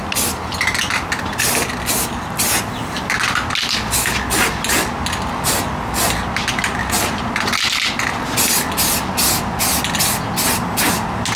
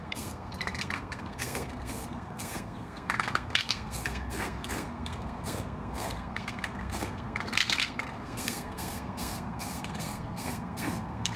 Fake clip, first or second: second